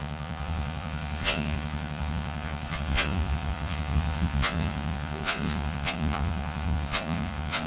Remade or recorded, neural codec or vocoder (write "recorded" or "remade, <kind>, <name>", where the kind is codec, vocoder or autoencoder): remade, vocoder, Vocos